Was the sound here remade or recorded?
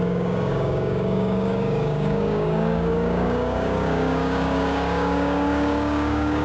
remade